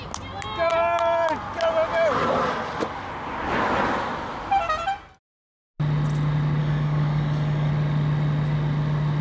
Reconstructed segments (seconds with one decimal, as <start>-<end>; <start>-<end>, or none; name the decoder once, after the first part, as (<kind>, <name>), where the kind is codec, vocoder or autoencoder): 6.6-7.7 (codec, DAC)

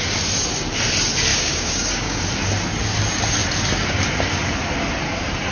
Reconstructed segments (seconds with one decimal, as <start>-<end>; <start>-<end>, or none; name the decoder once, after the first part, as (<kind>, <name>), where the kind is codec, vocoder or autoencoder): 1.3-2.2 (codec, DAC)

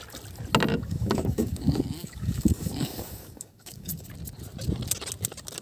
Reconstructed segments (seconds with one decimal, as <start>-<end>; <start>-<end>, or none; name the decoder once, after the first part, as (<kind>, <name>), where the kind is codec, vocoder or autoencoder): 0.7-4.1 (codec, DAC)

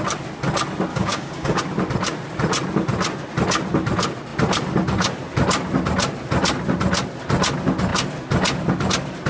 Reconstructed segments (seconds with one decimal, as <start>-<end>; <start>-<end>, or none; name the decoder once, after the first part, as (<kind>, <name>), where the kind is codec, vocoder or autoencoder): 0.9-1.6 (codec, DAC)